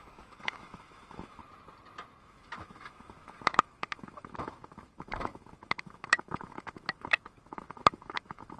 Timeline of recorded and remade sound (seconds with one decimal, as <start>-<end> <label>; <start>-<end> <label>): 0.0-1.4 remade; 1.4-2.2 recorded; 2.2-8.6 remade